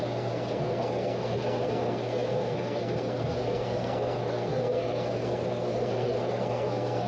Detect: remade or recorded remade